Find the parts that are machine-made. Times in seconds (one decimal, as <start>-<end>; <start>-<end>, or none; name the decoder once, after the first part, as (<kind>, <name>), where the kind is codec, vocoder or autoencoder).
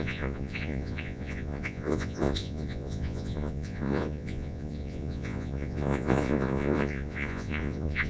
0.0-8.1 (vocoder, Vocos)